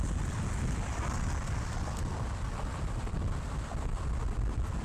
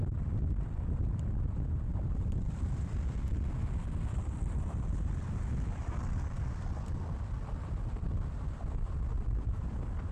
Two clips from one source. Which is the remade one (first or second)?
second